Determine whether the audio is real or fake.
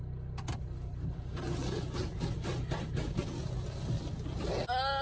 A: real